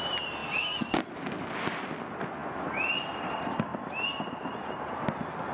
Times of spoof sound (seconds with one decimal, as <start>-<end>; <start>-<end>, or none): none